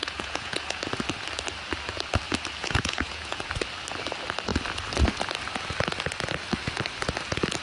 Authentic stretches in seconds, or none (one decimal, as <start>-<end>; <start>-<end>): 0.8-2.6; 3.5-7.6